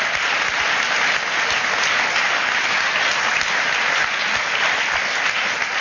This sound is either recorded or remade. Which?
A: recorded